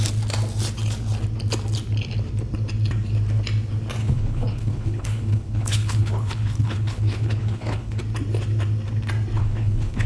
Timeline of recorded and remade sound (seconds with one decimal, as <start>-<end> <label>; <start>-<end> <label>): 0.0-4.0 recorded; 4.0-8.0 remade; 8.0-9.4 recorded; 9.4-10.1 remade